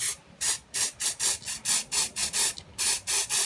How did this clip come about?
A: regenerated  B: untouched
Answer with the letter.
B